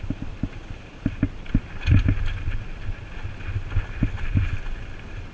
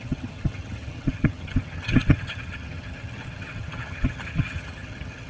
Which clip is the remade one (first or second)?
second